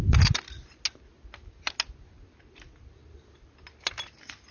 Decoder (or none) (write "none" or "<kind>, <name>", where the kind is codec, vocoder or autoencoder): none